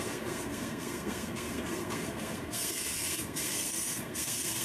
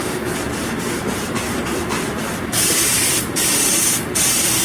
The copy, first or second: first